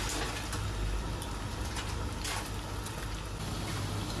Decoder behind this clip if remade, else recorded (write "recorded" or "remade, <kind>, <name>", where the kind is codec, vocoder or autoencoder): recorded